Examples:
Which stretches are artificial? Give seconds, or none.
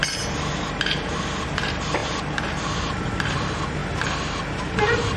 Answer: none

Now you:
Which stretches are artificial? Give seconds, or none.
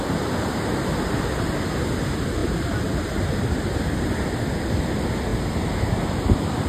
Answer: none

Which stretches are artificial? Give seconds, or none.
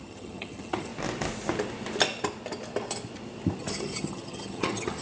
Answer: 0.0-0.9; 3.6-5.0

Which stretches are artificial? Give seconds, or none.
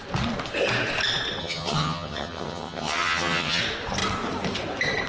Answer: 1.4-3.6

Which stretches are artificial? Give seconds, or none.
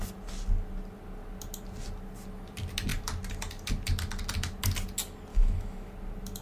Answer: 5.3-5.9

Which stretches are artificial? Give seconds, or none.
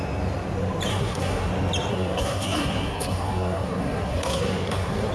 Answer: 0.9-1.5; 1.9-5.1